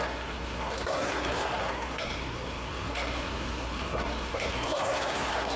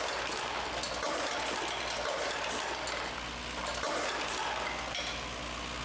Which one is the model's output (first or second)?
first